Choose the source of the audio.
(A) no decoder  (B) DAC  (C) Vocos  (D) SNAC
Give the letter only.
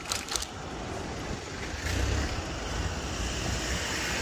A